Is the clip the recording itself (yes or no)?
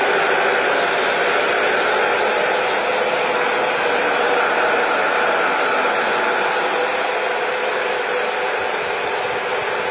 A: yes